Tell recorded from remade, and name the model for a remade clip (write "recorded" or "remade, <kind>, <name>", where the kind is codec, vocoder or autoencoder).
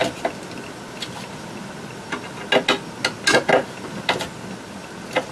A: recorded